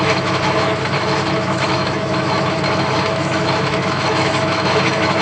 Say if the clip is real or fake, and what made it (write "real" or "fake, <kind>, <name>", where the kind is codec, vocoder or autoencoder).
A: fake, autoencoder, DAC-VAE